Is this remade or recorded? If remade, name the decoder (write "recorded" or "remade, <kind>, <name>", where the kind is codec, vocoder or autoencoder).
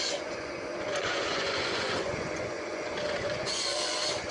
remade, vocoder, Vocos